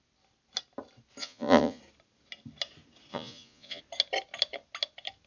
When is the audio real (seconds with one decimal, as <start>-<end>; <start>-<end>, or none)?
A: 0.0-1.2; 1.8-3.1; 3.8-5.3